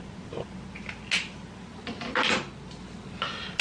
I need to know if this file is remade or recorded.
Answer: recorded